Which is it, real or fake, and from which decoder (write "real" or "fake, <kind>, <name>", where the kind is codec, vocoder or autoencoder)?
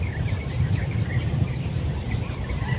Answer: fake, vocoder, BigVGAN v2